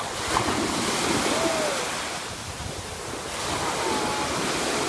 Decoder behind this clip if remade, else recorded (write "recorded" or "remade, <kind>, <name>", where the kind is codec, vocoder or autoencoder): recorded